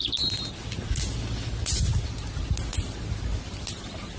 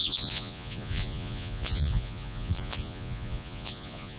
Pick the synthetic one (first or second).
second